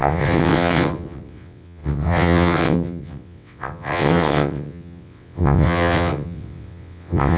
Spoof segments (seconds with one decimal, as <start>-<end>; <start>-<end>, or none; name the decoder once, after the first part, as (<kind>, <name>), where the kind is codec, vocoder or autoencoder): 0.0-7.4 (vocoder, WaveNeXt)